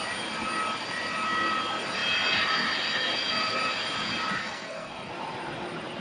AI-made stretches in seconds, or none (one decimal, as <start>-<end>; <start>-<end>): 4.4-5.1